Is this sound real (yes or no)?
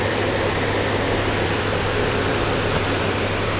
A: no